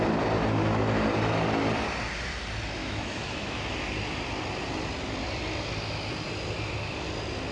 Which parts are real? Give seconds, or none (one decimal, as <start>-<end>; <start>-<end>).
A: 0.0-2.8; 3.6-7.5